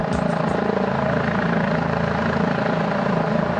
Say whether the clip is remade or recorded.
remade